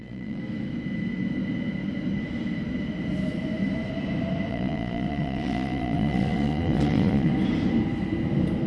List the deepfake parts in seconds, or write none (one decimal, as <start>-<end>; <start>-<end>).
0.0-0.4; 4.5-7.3